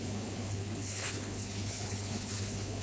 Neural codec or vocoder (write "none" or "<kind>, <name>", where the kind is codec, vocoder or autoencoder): codec, HILCodec